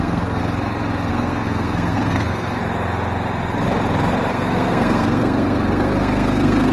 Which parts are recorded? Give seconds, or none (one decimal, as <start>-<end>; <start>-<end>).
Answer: 0.4-1.1; 2.6-4.3